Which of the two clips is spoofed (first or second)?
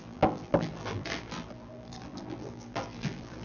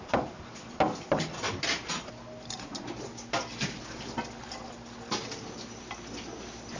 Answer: first